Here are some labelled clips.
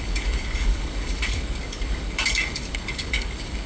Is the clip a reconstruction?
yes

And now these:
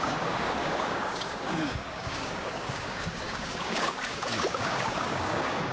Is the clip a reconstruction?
yes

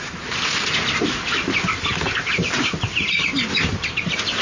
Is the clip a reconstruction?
no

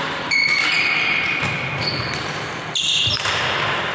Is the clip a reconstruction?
no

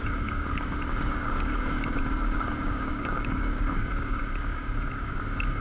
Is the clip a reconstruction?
yes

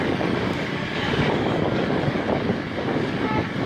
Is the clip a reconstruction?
yes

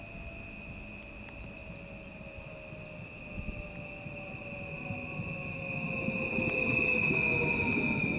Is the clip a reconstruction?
no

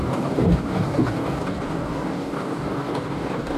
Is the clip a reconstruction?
yes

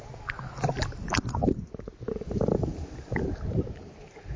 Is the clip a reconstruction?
no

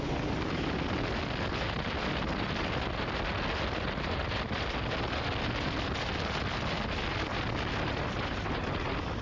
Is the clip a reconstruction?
no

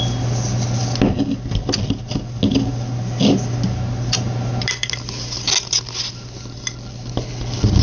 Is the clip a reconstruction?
no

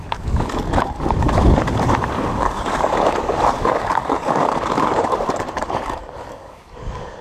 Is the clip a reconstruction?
yes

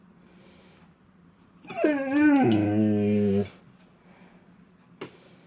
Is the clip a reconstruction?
no